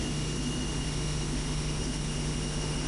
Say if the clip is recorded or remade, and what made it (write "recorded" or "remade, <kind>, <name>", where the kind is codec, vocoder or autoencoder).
remade, autoencoder, DAC-VAE